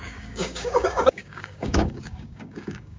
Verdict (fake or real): fake